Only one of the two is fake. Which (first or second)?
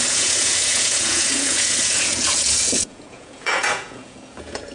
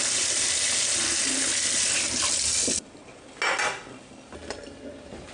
first